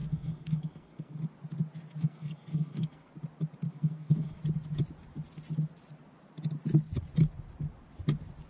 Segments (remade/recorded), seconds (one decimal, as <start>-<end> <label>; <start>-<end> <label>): 0.0-1.2 remade; 1.2-2.0 recorded; 2.0-3.1 remade; 3.1-3.7 recorded; 3.7-4.4 remade; 4.4-8.5 recorded

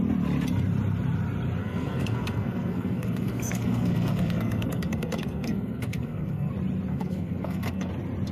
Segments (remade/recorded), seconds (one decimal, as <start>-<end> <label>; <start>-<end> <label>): 0.0-1.6 recorded; 1.6-6.5 remade; 6.5-6.9 recorded; 6.9-7.9 remade; 7.9-8.3 recorded